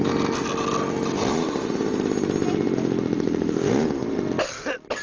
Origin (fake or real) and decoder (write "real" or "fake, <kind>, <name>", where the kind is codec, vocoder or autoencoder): real